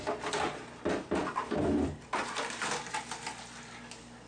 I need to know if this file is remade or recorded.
recorded